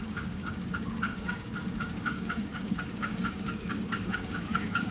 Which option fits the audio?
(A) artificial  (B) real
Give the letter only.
A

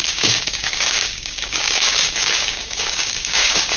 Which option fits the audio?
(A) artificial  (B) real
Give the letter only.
A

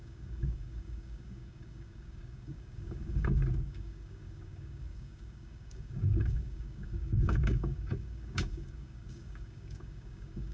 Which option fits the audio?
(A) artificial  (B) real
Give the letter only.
A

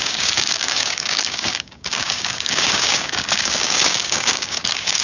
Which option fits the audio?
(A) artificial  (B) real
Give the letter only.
A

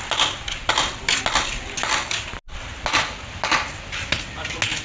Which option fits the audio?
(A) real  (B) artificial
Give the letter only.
A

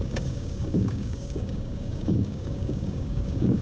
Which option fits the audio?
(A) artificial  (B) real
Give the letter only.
A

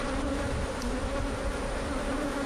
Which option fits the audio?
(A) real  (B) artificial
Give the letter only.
A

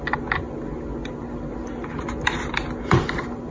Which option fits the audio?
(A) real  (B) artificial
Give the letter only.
A